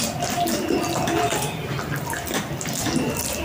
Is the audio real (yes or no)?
yes